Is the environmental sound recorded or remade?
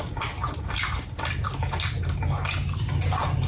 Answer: recorded